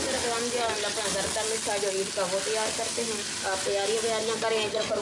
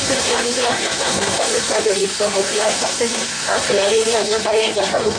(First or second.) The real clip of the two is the first